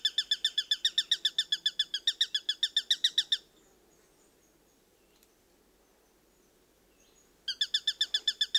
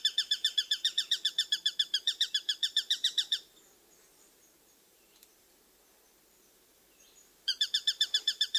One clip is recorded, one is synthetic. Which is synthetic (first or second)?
second